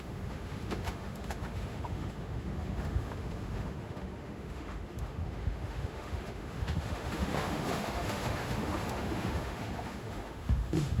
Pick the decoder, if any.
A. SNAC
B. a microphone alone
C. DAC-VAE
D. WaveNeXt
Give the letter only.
C